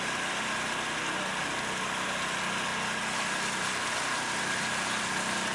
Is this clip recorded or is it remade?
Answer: recorded